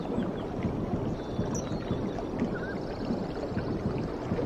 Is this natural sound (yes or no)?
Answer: yes